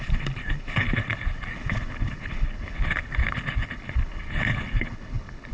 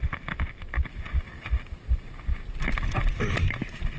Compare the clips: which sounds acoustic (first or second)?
second